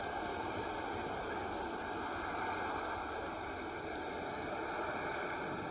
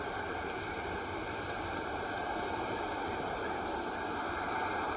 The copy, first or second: second